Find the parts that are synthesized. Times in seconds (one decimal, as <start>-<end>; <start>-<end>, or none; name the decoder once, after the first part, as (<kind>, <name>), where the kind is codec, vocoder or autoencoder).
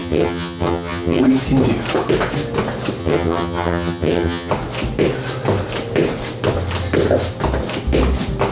0.0-1.2 (vocoder, HiFi-GAN); 3.0-4.5